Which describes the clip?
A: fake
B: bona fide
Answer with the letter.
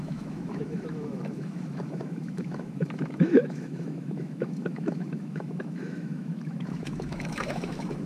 A